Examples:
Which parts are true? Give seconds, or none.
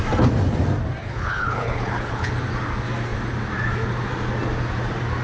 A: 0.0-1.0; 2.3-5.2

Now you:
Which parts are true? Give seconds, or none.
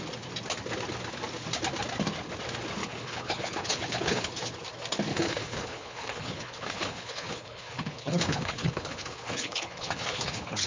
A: 0.0-2.8; 4.3-5.1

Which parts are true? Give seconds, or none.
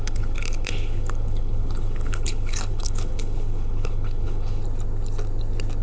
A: 4.6-5.8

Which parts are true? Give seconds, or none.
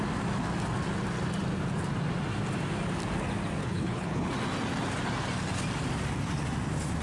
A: 0.0-3.6; 4.3-7.0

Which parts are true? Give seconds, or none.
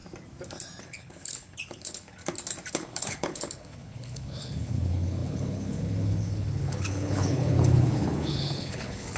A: 0.0-0.8; 2.2-2.7